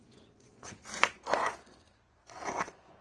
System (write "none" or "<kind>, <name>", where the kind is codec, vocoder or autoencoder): vocoder, Vocos